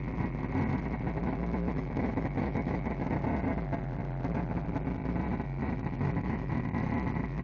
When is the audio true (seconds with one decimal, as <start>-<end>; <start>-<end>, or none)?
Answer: 0.0-1.2; 3.2-5.6; 6.5-7.4